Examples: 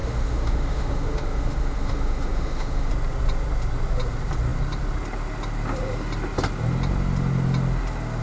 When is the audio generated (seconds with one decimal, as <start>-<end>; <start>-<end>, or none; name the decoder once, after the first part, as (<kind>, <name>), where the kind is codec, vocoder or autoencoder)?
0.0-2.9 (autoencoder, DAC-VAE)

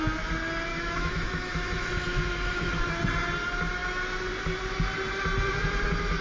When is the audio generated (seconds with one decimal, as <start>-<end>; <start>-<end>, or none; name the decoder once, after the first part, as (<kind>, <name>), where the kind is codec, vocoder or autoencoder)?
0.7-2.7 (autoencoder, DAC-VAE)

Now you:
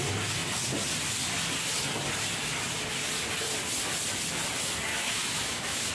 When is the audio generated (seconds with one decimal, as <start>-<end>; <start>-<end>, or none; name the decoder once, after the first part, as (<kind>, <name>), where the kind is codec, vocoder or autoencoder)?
4.9-5.9 (autoencoder, DAC-VAE)

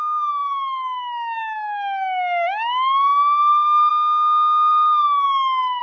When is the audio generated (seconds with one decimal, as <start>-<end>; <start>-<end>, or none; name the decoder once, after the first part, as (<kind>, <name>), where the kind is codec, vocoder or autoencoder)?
0.4-3.9 (autoencoder, DAC-VAE); 4.7-5.8

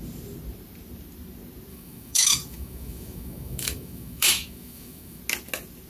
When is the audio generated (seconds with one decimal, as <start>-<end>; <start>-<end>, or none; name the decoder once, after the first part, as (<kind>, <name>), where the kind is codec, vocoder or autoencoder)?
1.7-5.2 (autoencoder, DAC-VAE)